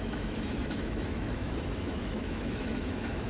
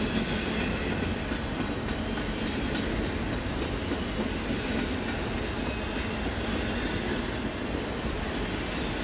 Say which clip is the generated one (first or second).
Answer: first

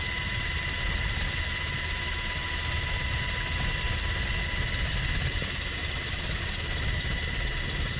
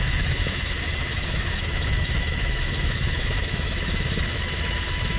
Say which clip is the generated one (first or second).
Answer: second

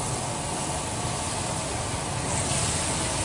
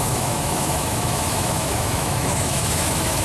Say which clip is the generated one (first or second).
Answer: second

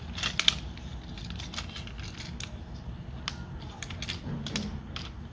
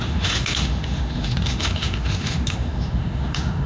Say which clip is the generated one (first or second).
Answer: second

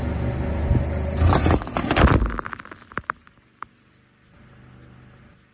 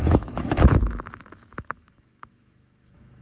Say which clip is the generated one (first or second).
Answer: second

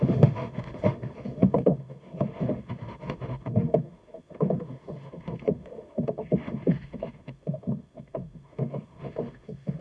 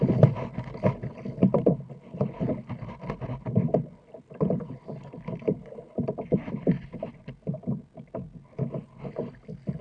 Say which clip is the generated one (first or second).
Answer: first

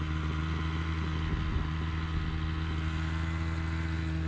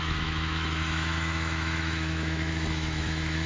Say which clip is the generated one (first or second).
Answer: second